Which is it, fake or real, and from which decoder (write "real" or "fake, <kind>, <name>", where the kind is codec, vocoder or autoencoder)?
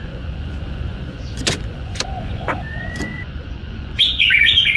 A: fake, vocoder, Vocos